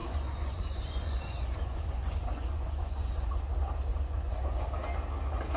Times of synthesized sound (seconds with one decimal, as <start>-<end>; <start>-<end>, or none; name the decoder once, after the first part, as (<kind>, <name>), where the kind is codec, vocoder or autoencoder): 0.0-3.4 (vocoder, Vocos); 3.9-4.6